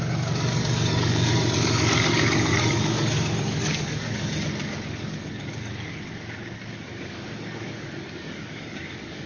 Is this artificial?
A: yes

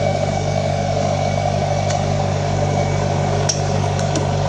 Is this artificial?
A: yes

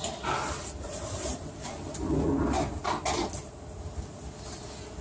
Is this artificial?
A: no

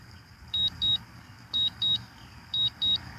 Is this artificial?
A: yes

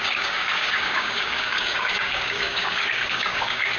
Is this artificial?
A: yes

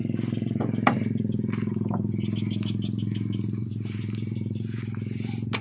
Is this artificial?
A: no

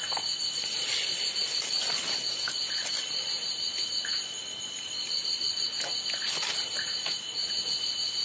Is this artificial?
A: no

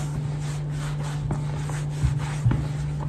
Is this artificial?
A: no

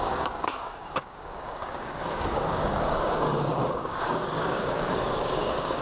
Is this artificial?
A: yes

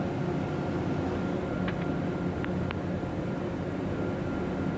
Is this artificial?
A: no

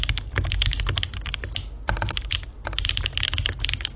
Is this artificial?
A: no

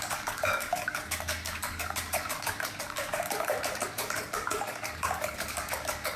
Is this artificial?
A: yes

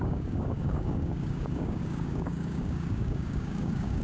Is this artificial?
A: yes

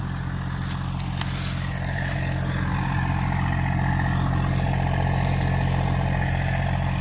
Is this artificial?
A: no